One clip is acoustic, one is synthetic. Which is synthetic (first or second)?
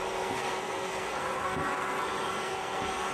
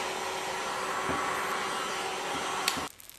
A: first